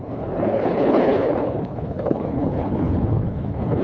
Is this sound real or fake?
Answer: fake